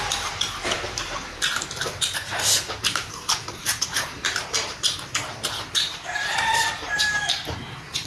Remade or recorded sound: remade